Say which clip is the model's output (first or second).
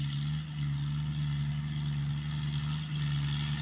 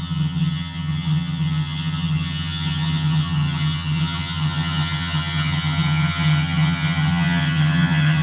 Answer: second